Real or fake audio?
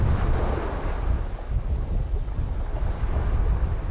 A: real